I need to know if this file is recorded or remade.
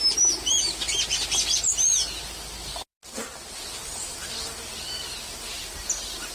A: recorded